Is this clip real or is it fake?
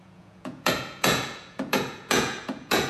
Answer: fake